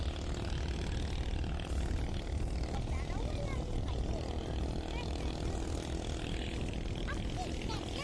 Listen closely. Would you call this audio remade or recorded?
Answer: recorded